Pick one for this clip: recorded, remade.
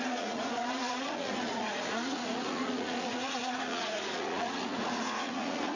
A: remade